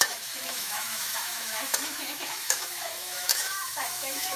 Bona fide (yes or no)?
no